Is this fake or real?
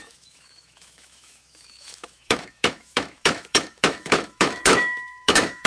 fake